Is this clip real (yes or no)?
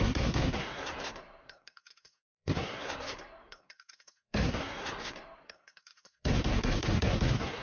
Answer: no